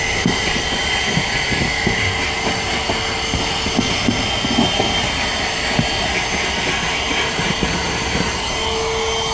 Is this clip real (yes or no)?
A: yes